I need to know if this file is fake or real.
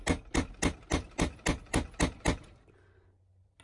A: real